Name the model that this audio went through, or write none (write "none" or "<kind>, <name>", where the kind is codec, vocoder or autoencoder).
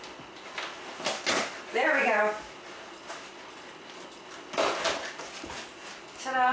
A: none